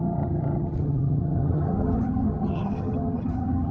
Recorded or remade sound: remade